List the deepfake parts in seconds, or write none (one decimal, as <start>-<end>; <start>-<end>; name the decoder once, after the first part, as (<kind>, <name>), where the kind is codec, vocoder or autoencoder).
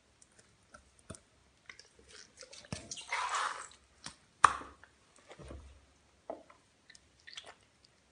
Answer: 5.4-6.0 (vocoder, BigVGAN v2)